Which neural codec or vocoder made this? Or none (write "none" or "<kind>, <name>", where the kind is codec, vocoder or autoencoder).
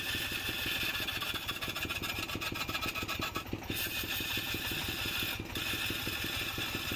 none